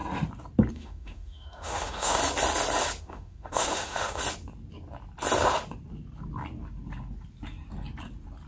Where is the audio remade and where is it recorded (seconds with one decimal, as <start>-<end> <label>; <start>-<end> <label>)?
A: 0.0-0.7 recorded; 0.7-2.2 remade; 2.2-3.0 recorded; 3.0-4.2 remade; 4.2-8.5 recorded